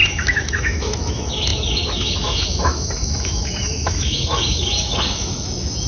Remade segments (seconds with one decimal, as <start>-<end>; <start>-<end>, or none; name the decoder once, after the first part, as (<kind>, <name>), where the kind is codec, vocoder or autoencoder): 0.0-5.9 (autoencoder, DAC-VAE)